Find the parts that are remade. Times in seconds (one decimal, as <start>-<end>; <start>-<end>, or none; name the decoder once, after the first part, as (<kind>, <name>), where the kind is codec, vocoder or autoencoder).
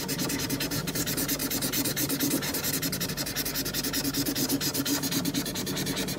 none